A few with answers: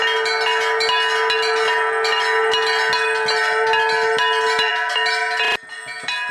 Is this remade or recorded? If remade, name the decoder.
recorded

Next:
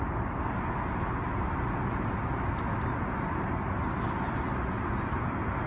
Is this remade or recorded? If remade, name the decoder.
recorded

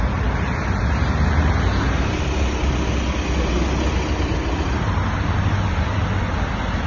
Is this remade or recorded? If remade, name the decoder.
recorded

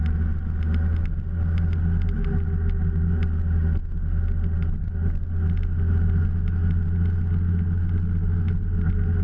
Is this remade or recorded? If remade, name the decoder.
recorded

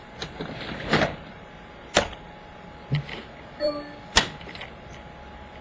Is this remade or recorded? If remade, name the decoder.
remade, vocoder, BigVGAN v2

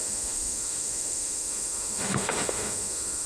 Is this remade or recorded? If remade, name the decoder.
remade, autoencoder, DAC-VAE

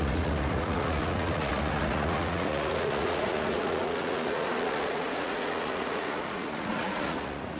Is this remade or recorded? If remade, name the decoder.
remade, vocoder, Vocos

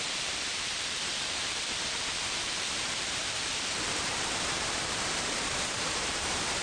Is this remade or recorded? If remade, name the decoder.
remade, vocoder, BigVGAN v2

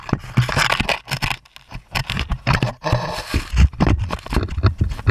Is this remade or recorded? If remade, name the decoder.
recorded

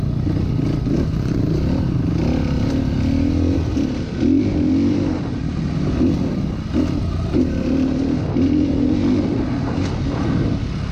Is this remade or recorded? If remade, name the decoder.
recorded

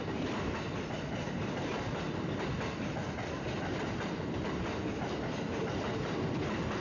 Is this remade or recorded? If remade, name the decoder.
recorded